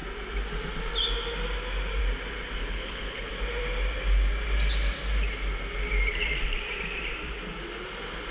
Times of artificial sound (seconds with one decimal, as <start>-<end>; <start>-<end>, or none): 2.6-3.3